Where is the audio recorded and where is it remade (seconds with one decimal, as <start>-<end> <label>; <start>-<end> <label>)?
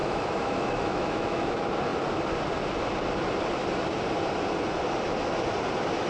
0.0-1.5 remade; 1.5-6.1 recorded